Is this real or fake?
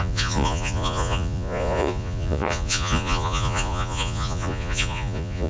fake